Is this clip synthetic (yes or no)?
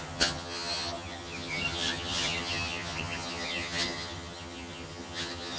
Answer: yes